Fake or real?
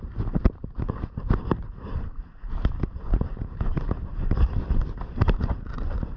fake